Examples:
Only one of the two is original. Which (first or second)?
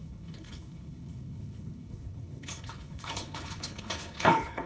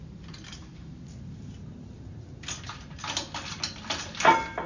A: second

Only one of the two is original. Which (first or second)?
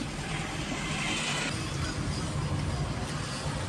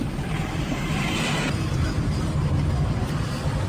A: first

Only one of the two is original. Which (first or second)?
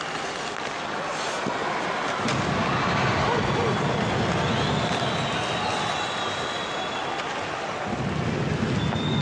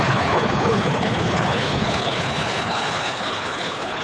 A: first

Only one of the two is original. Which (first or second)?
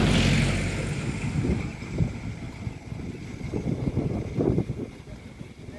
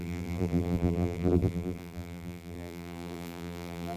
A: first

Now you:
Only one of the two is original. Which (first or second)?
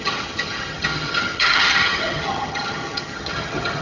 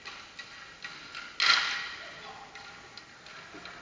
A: second